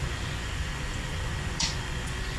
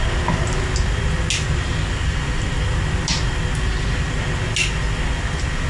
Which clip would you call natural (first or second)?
second